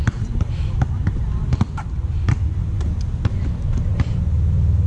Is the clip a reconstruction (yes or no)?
no